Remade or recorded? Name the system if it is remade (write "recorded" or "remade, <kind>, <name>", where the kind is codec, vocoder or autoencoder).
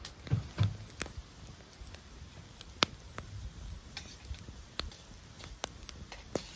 recorded